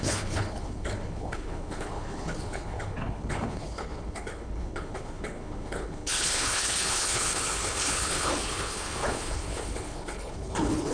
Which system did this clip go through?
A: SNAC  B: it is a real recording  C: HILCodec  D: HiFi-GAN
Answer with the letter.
C